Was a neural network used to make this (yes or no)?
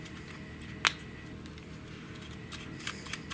no